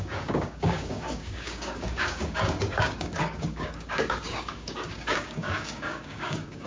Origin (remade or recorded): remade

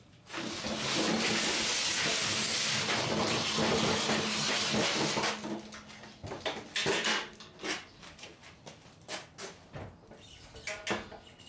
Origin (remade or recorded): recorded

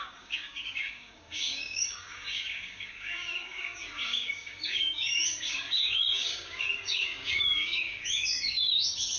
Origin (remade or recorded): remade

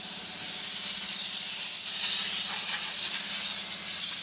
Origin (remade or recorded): recorded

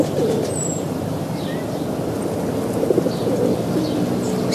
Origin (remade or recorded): recorded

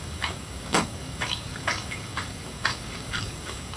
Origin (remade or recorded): remade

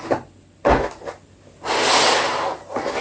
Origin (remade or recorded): recorded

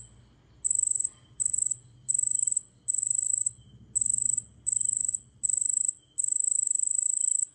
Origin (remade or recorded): recorded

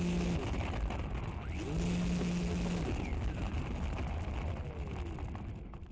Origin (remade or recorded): recorded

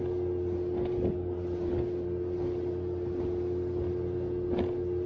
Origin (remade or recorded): recorded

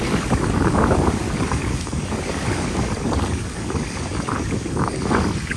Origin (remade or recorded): remade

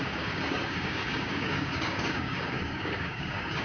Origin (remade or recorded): remade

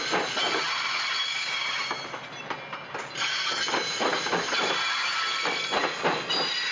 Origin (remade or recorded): recorded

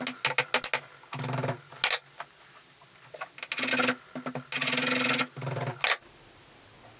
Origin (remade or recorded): recorded